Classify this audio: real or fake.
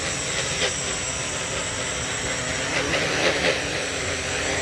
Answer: real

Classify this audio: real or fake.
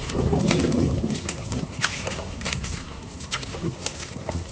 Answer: fake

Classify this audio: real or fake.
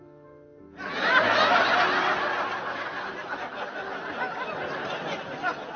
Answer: real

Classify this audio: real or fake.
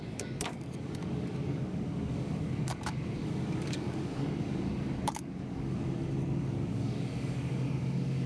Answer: fake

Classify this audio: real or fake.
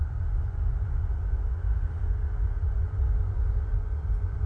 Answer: fake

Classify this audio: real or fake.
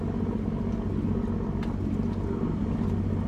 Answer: real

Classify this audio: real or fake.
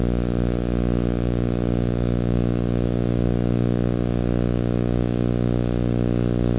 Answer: fake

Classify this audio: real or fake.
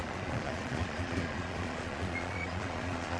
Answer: fake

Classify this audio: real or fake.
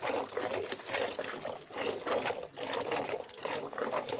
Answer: real